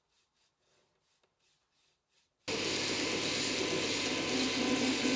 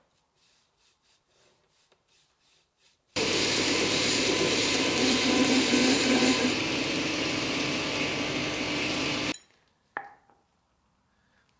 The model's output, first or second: second